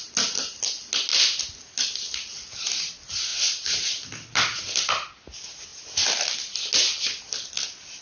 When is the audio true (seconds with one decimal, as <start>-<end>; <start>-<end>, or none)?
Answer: 0.0-8.0